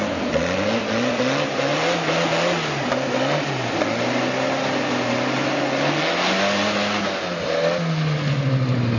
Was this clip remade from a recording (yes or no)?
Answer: no